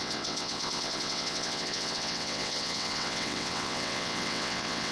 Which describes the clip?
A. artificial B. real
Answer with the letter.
A